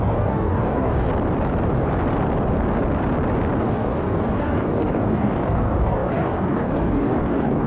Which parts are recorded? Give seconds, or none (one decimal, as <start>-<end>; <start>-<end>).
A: 1.1-3.6